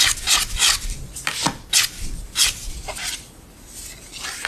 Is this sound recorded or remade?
recorded